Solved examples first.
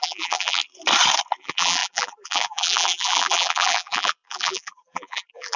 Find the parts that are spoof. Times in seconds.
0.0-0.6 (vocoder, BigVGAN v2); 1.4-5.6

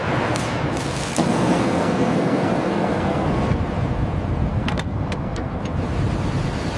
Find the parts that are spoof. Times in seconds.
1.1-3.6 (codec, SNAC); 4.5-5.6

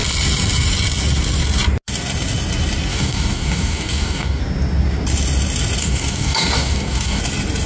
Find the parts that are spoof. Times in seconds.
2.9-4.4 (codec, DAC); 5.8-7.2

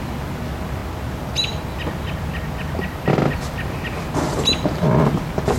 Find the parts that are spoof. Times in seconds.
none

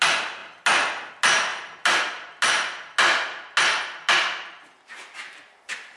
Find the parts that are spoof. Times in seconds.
none

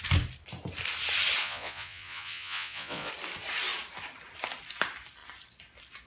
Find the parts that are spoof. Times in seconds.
1.4-3.1 (vocoder, Vocos)

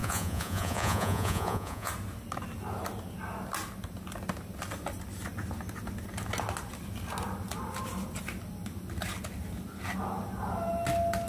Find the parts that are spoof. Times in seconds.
0.0-1.9 (vocoder, Vocos)

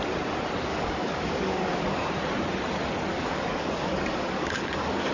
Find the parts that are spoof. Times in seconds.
0.7-2.0 (codec, DAC); 3.1-5.1